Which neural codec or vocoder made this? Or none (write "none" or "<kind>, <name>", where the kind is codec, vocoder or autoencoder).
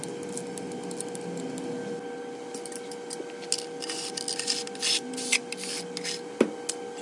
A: none